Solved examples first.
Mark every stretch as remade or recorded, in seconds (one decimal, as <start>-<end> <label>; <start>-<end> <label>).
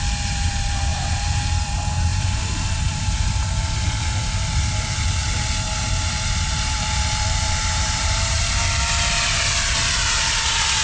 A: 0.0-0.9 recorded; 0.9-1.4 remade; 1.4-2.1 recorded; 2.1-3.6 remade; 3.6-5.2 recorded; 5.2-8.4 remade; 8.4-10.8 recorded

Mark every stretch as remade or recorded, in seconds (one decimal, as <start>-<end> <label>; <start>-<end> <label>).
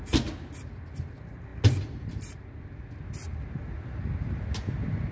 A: 0.0-5.1 recorded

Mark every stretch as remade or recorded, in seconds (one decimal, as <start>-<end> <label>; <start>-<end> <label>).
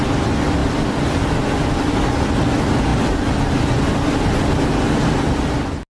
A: 0.0-5.9 recorded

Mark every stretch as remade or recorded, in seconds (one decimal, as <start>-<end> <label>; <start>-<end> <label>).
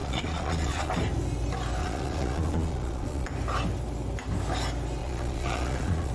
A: 0.0-0.9 remade; 0.9-1.8 recorded; 1.8-3.3 remade; 3.3-5.0 recorded; 5.0-6.1 remade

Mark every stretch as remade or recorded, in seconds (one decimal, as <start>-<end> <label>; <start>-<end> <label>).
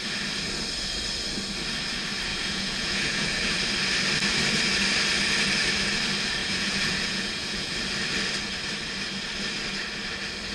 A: 0.0-2.3 recorded; 2.3-3.6 remade; 3.6-6.4 recorded; 6.4-7.7 remade; 7.7-10.5 recorded